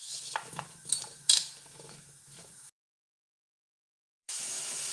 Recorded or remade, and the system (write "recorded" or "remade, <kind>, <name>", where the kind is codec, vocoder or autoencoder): remade, autoencoder, DAC-VAE